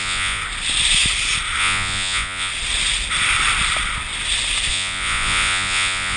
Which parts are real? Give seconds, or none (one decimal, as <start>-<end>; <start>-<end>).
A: 0.4-1.6; 2.5-4.7